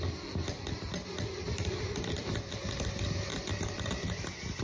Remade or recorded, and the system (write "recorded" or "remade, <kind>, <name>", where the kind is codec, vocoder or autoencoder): recorded